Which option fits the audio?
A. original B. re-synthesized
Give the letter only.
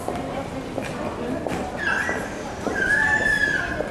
A